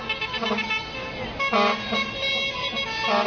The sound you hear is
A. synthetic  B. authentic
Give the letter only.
B